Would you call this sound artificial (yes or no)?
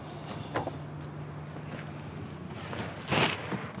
no